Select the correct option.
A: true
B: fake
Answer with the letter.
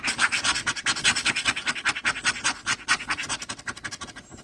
A